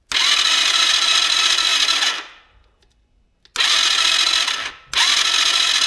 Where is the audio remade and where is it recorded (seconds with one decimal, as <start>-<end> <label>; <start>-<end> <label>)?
0.0-5.9 recorded